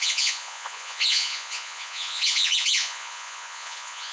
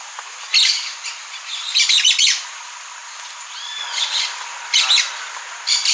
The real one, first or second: second